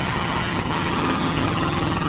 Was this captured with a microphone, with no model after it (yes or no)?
no